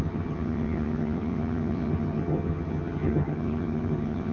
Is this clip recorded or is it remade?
remade